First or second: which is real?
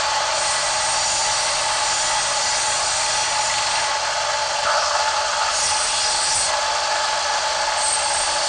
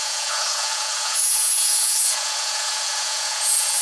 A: first